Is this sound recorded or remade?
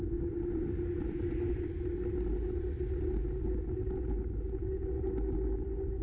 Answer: recorded